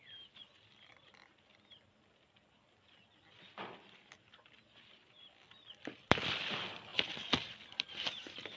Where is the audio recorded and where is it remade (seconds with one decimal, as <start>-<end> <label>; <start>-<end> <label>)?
0.0-8.6 recorded